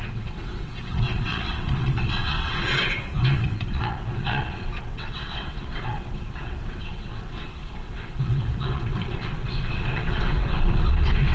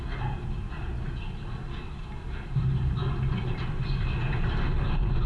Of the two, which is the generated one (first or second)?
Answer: first